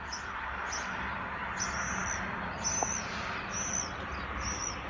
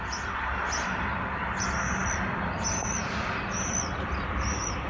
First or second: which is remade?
second